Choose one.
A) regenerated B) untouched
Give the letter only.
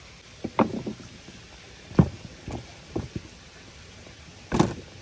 B